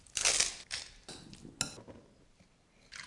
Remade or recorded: recorded